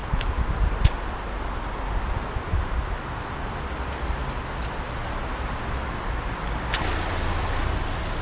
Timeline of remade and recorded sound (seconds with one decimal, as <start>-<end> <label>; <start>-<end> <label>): 0.0-8.2 recorded